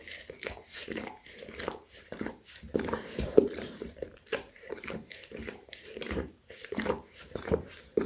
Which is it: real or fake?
fake